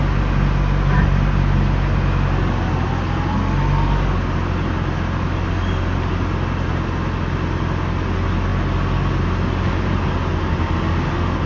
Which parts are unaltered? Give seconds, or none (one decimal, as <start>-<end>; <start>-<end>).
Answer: 0.0-11.5